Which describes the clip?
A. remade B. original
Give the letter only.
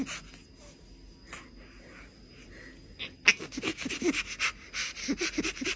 B